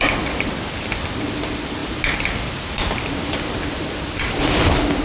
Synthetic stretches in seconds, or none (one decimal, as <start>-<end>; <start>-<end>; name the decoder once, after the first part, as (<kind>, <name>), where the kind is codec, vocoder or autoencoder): none